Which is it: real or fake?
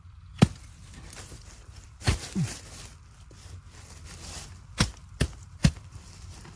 fake